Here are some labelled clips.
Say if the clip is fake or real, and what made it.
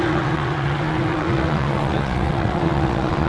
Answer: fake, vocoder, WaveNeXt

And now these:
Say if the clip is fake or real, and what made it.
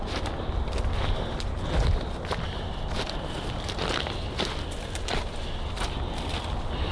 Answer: real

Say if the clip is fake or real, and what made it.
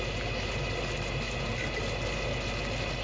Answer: real